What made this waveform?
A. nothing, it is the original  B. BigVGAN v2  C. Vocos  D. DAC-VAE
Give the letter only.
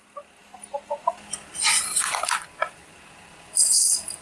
A